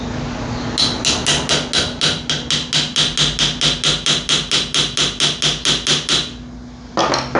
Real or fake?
real